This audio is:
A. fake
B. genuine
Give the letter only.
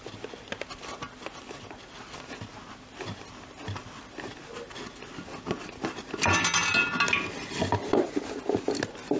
B